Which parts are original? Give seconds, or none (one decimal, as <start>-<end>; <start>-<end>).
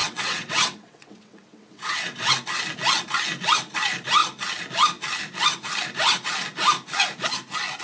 2.3-7.8